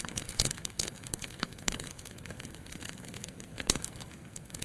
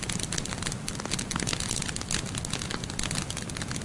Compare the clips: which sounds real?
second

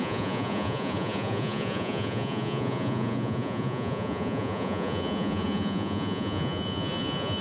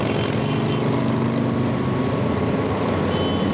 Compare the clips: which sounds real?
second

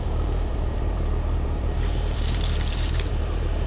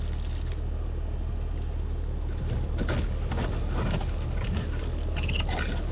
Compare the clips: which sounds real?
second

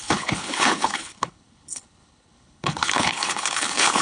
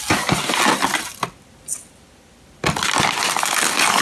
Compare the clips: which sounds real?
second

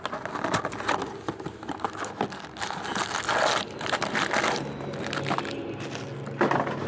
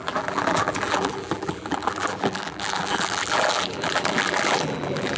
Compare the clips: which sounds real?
first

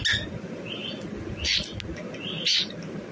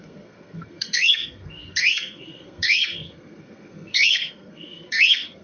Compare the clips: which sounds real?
first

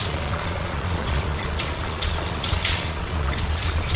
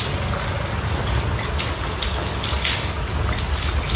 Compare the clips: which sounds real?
second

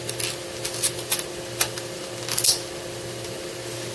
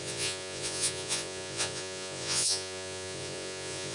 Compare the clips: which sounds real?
first